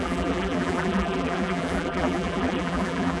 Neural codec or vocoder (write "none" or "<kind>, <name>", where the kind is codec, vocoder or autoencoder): vocoder, BigVGAN v2